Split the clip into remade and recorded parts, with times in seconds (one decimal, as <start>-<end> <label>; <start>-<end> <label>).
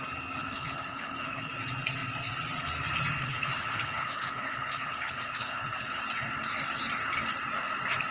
0.0-0.4 recorded; 0.4-1.5 remade; 1.5-3.2 recorded; 3.2-6.0 remade; 6.0-8.1 recorded